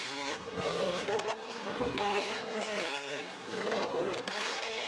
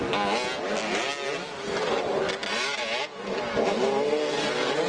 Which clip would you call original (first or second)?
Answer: second